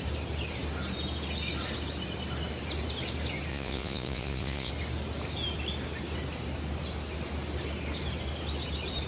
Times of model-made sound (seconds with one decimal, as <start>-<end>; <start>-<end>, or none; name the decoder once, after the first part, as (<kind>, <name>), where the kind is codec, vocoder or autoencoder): 3.5-4.7 (vocoder, Vocos)